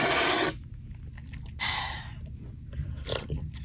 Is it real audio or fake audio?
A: real